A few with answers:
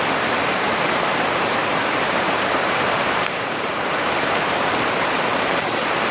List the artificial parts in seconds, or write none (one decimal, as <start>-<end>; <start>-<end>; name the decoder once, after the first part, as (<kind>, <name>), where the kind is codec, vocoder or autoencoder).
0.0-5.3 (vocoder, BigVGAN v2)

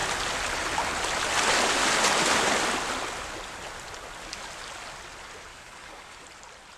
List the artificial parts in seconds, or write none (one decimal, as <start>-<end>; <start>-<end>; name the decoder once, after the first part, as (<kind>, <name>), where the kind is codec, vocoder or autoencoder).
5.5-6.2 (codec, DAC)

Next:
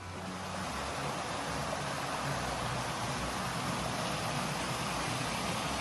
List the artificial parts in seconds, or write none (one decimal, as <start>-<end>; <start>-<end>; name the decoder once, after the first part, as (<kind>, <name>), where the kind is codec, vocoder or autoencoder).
none

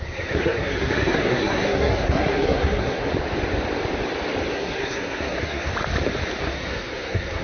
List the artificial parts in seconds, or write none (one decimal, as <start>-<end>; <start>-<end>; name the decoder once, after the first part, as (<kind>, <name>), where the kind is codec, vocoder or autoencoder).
0.0-3.1 (codec, SNAC); 4.5-5.7; 6.4-7.4

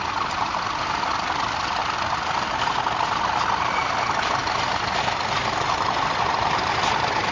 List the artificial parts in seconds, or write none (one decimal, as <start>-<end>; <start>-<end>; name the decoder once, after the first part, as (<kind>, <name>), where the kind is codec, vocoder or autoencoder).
0.0-1.8 (vocoder, BigVGAN v2); 6.2-7.3

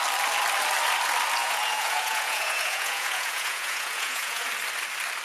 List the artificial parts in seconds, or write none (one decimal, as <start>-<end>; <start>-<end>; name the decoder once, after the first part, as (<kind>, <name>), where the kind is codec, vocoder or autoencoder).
1.4-4.5 (vocoder, Vocos)